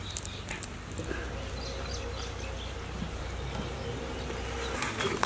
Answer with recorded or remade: recorded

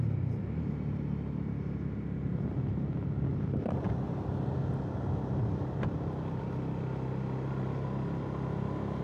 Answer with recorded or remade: recorded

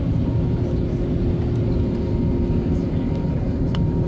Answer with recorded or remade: recorded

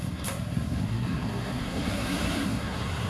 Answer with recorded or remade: remade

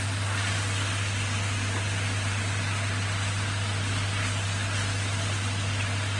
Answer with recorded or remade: recorded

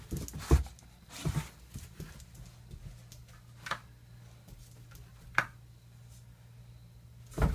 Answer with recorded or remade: recorded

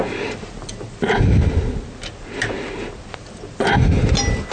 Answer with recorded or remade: recorded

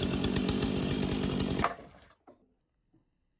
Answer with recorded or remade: recorded